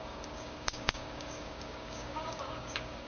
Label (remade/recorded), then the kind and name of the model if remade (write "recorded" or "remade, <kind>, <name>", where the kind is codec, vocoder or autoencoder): remade, codec, DAC